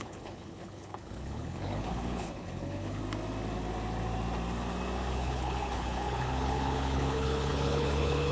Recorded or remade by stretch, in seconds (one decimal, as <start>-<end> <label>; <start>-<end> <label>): 0.0-3.0 remade; 3.0-5.1 recorded; 5.1-8.3 remade